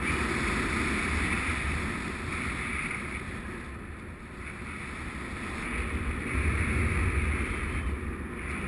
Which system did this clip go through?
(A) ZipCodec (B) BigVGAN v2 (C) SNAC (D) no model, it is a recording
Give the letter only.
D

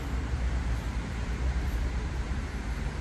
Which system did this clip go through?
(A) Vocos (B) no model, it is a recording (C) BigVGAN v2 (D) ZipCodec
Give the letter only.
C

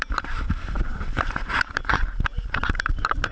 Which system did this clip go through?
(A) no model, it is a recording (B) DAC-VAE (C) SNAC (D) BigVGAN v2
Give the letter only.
D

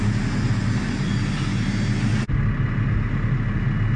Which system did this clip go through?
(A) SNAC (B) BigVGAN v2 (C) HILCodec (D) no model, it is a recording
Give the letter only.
D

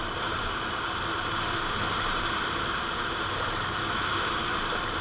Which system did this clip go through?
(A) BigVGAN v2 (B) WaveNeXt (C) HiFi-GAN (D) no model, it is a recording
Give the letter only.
A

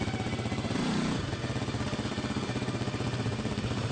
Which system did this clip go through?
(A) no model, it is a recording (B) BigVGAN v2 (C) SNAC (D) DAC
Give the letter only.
B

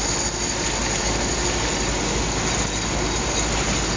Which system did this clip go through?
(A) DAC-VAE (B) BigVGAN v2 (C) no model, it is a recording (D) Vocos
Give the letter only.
C